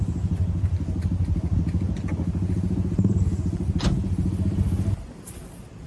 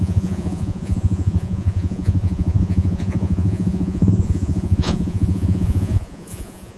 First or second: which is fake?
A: second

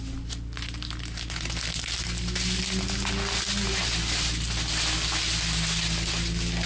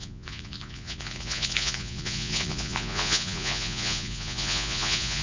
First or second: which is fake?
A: second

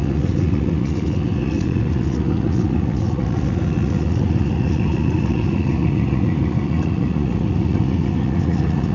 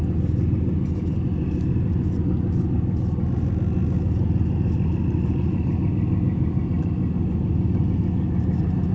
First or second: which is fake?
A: first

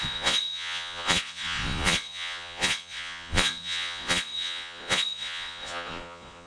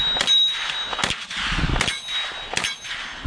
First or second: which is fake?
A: first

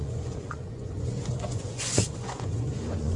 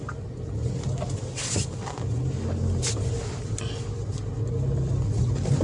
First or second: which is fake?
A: first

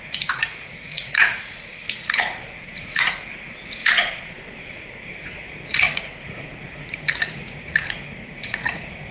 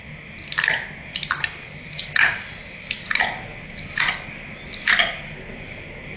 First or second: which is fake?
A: first